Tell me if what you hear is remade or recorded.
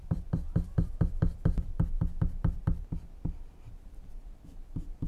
remade